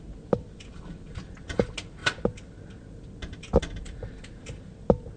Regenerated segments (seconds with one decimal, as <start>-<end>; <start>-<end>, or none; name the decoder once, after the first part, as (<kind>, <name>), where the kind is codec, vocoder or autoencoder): none